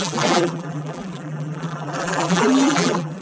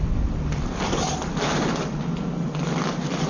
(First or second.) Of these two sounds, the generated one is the first